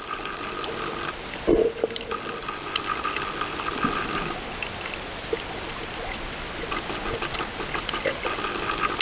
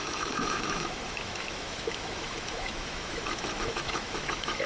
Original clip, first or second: first